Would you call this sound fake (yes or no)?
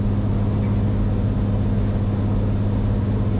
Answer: no